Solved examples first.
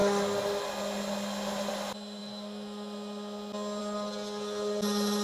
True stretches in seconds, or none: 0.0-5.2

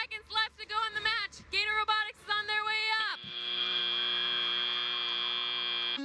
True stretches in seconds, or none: 0.0-0.7; 2.3-3.1; 3.8-6.0

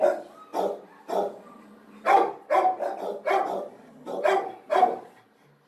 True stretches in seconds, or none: 0.0-5.7

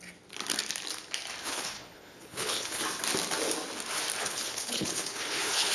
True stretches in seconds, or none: 0.0-1.4; 2.8-4.2

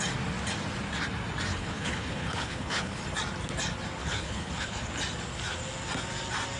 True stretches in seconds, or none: 0.0-1.5; 3.0-4.0; 4.9-6.6

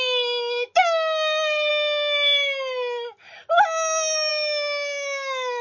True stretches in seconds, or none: 1.7-4.3